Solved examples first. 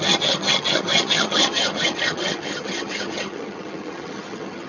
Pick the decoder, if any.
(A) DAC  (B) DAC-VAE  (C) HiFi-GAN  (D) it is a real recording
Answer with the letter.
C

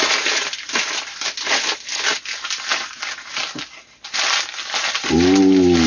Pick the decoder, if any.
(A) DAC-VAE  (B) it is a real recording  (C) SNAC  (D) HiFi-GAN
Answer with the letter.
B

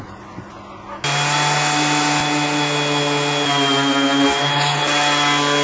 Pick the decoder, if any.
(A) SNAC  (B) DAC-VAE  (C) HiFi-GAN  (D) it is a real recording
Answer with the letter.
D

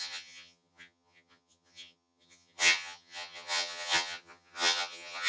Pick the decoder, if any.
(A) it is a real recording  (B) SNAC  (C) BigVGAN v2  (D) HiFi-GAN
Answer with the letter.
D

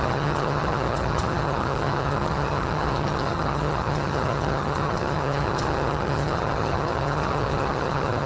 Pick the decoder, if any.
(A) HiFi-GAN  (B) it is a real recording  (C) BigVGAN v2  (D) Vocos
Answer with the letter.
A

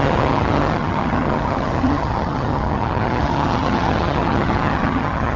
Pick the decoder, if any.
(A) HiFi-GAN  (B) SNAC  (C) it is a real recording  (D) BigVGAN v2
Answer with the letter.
A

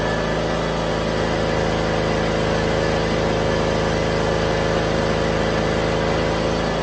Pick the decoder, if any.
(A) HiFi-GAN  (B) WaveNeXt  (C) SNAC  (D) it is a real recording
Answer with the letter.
D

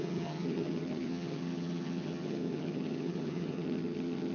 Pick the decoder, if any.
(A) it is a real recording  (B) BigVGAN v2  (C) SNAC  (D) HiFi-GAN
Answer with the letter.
D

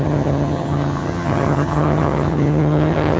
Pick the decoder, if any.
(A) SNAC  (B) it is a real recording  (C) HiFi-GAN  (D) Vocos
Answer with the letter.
C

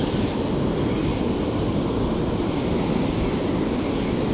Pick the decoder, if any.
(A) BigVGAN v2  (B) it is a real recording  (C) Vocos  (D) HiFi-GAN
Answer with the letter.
B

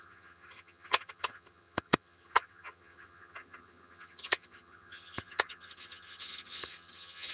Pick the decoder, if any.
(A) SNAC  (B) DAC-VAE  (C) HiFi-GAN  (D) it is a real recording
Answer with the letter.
C